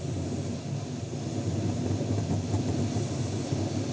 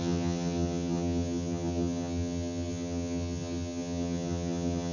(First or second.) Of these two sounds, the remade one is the second